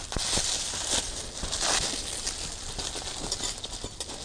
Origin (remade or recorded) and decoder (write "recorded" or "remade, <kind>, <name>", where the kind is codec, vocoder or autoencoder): recorded